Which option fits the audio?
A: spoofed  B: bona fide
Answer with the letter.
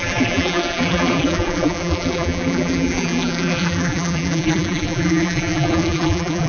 A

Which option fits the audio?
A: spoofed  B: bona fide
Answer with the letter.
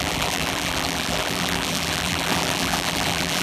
A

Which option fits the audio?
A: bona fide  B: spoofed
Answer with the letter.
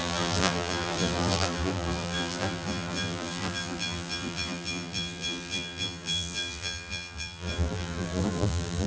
B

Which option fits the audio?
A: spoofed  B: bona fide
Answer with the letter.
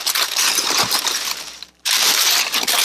A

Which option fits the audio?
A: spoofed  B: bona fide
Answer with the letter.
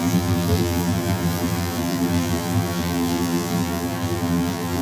A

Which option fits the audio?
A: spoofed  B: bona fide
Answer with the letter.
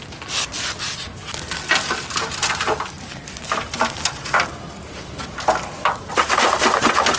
B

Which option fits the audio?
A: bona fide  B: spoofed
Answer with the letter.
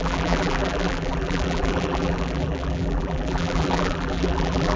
B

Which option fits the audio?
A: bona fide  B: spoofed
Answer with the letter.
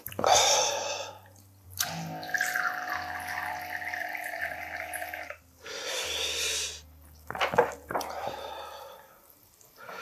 A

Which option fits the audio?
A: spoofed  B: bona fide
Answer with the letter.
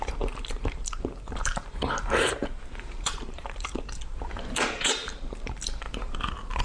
A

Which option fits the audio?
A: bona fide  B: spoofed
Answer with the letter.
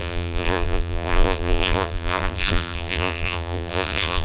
B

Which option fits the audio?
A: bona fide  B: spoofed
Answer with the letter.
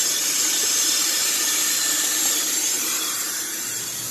B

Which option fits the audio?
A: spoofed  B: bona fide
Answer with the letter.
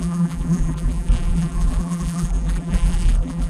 A